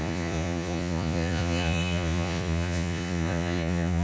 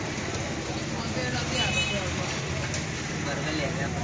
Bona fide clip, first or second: second